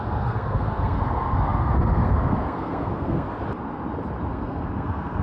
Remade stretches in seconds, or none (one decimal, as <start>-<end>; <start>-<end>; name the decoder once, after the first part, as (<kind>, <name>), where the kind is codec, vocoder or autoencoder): 0.0-3.4 (codec, SNAC); 4.3-5.2